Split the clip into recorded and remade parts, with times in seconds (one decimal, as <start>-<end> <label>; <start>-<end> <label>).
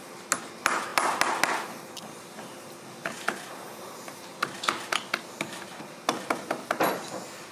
0.0-7.5 recorded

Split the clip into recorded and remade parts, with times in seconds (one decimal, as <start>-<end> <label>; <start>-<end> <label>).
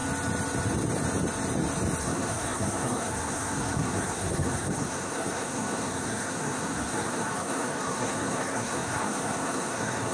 0.0-2.0 recorded; 2.0-10.1 remade